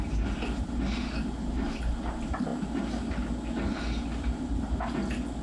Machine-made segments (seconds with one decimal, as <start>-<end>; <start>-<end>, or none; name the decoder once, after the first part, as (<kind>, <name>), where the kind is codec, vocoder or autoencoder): none